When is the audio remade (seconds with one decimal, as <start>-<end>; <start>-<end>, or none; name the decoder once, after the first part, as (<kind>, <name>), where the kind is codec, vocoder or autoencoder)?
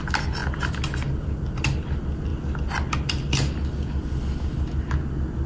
none